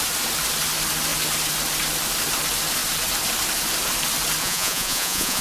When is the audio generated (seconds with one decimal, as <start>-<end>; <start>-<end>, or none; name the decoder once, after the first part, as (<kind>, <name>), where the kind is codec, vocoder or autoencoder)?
4.4-5.4 (vocoder, Vocos)